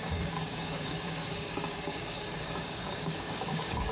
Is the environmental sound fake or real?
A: fake